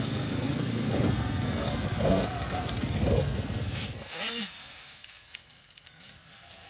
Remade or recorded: remade